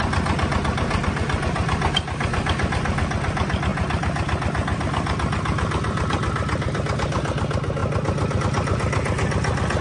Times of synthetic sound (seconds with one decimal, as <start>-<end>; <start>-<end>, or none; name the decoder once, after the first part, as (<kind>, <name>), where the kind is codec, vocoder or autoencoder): none